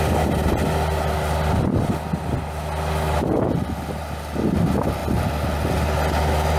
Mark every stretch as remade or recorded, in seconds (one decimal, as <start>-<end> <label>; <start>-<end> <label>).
0.0-6.6 recorded